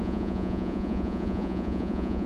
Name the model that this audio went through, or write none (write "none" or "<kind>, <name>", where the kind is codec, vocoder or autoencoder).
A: vocoder, Vocos